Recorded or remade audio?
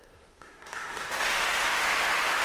remade